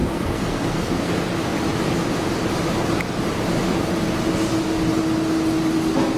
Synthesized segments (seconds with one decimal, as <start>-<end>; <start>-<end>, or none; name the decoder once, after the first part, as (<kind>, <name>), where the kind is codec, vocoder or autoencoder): 0.0-1.1 (codec, SNAC)